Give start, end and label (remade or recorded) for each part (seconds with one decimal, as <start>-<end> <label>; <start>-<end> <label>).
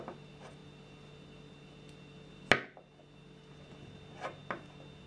0.0-5.1 recorded